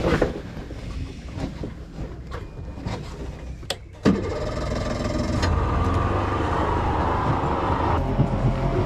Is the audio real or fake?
real